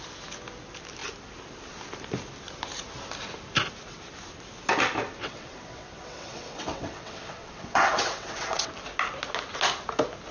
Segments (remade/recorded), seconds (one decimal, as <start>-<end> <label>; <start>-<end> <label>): 0.0-5.2 recorded; 5.2-8.7 remade; 8.7-10.3 recorded